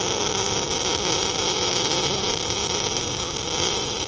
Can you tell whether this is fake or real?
real